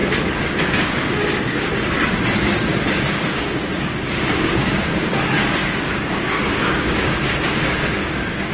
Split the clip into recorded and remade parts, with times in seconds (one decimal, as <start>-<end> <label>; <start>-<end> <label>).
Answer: 0.0-0.6 recorded; 0.6-1.7 remade; 1.7-3.1 recorded; 3.1-8.5 remade